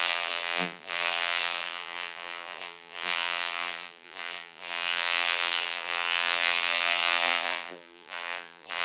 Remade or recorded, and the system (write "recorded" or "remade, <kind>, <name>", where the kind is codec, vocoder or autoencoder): remade, vocoder, BigVGAN v2